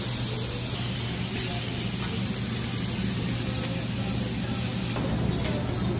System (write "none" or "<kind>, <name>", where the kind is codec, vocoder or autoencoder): none